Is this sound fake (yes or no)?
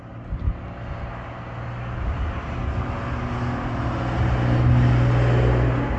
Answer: no